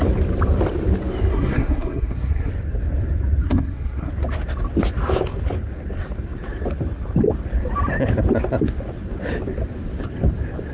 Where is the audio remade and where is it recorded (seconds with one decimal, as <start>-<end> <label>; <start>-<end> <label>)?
0.0-1.3 recorded; 1.3-2.5 remade; 2.5-3.4 recorded; 3.4-4.1 remade; 4.1-10.7 recorded